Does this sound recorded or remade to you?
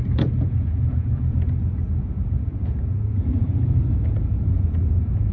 remade